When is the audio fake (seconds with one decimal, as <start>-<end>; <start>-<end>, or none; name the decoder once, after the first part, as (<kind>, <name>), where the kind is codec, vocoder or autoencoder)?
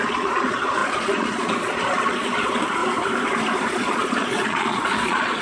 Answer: 0.0-2.8 (vocoder, Vocos); 3.7-5.4